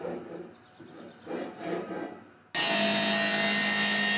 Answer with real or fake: real